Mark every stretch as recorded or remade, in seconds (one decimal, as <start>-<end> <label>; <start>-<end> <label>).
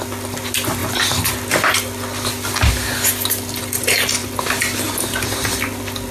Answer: 0.0-6.1 recorded